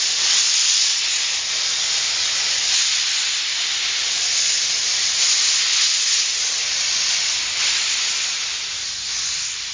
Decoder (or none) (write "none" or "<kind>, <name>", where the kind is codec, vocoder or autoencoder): none